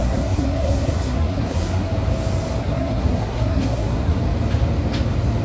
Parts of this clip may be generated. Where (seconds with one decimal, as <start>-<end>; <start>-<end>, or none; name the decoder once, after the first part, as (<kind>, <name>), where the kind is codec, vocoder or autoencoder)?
0.0-1.9 (codec, SNAC); 2.6-4.2